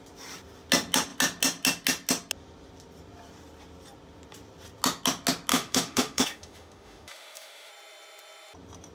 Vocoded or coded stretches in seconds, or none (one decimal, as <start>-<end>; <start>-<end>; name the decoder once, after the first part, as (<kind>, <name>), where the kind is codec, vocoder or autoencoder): 5.5-7.7 (autoencoder, DAC-VAE)